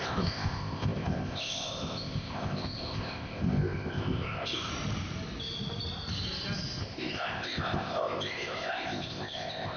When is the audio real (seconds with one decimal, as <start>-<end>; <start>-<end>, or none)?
4.7-6.8